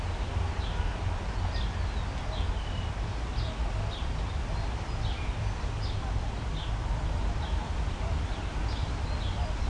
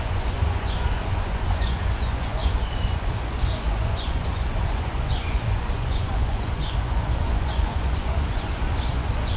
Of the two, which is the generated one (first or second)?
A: second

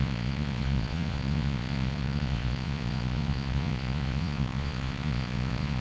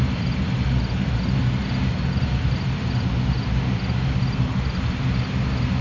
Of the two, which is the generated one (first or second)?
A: first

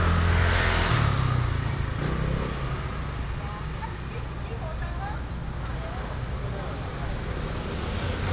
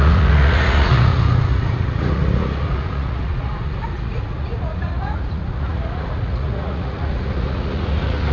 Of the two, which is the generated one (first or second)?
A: second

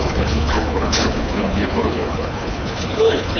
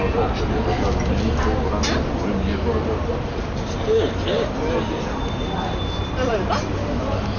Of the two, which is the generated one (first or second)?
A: first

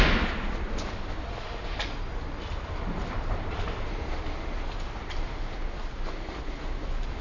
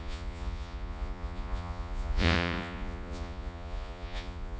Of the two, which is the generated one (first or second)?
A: second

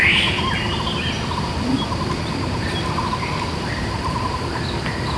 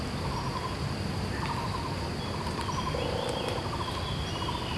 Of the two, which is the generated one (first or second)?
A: first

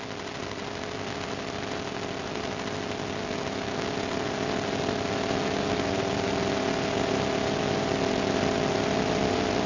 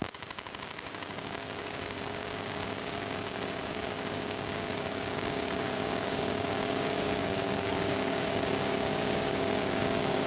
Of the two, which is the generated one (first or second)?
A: second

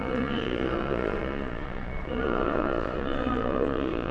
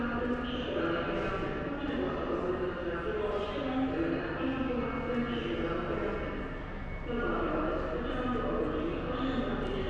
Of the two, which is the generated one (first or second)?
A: first